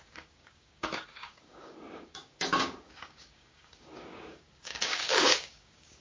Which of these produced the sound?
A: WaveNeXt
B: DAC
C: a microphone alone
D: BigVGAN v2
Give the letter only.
B